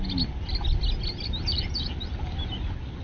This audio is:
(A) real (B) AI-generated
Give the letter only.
A